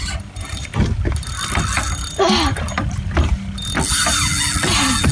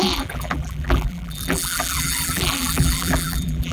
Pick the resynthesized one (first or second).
second